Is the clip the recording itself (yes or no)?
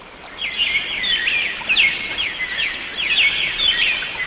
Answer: yes